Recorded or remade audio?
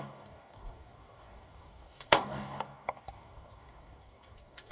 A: remade